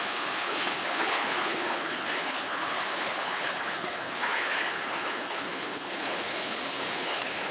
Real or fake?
fake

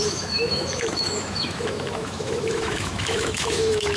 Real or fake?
fake